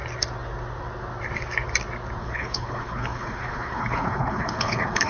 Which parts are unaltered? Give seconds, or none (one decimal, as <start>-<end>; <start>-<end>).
0.0-2.2